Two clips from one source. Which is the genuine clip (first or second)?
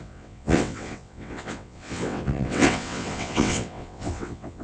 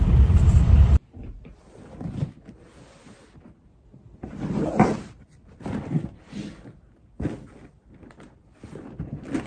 second